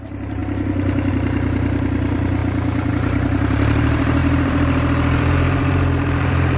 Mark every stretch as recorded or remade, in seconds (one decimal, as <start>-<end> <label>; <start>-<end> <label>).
0.0-0.4 remade; 0.4-1.1 recorded; 1.1-2.4 remade; 2.4-2.9 recorded; 2.9-6.6 remade